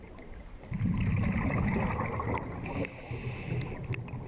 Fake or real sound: real